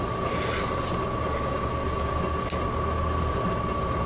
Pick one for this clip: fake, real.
real